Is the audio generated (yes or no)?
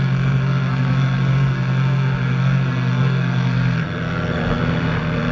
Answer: yes